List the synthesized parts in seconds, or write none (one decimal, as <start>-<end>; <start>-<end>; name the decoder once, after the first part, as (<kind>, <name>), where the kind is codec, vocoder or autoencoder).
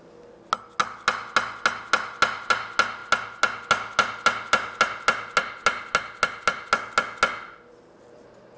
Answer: none